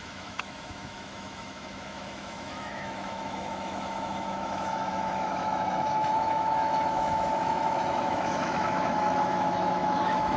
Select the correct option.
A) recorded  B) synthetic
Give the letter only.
B